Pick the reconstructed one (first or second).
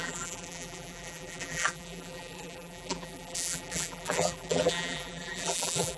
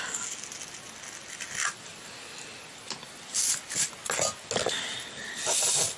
first